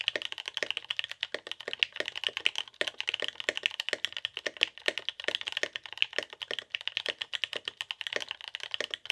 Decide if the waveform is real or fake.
real